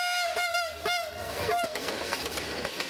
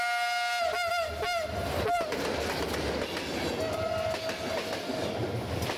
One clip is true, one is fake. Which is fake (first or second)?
first